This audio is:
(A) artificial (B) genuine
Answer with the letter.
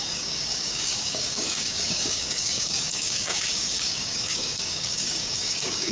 A